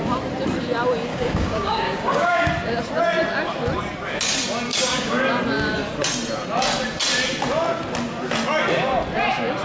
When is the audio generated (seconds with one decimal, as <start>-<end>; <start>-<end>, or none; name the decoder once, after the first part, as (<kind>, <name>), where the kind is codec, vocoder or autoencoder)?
1.1-2.5 (codec, DAC); 4.7-5.2